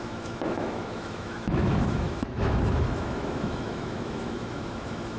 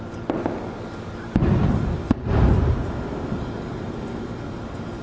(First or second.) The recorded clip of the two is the second